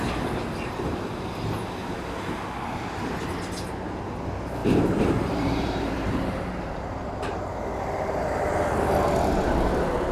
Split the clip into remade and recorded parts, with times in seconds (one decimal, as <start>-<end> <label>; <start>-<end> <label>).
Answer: 0.0-4.6 recorded; 4.6-7.5 remade; 7.5-10.1 recorded